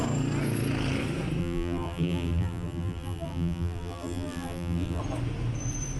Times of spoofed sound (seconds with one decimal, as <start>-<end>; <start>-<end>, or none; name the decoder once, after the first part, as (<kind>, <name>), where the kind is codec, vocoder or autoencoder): 1.4-5.0 (vocoder, BigVGAN v2)